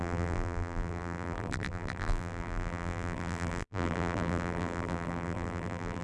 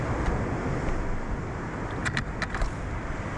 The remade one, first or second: first